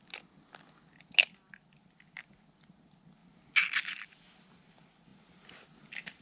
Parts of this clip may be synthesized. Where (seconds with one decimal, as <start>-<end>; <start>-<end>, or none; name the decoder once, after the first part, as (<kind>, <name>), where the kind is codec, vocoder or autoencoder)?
none